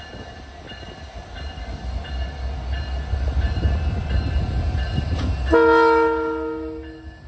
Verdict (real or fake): real